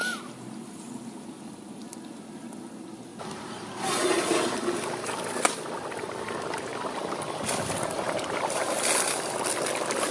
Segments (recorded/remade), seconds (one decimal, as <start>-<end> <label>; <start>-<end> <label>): 0.0-3.1 recorded; 3.1-5.2 remade; 5.2-10.1 recorded